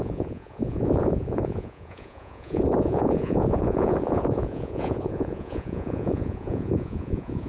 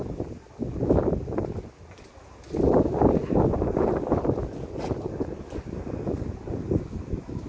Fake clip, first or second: first